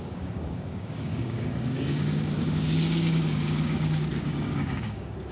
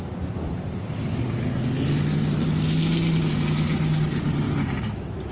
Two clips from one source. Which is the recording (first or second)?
second